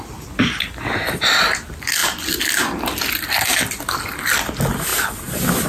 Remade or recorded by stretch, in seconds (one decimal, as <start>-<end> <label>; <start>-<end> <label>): 0.0-5.7 recorded